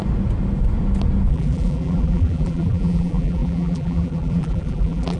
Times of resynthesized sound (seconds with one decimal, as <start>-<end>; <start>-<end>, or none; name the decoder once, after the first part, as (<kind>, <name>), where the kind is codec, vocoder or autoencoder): 1.3-5.2 (vocoder, BigVGAN v2)